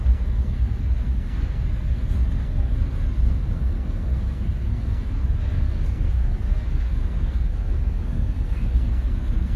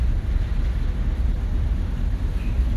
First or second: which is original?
second